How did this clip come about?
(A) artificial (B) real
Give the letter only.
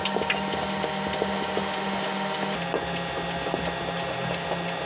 B